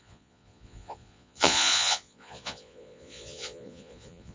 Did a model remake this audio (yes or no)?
yes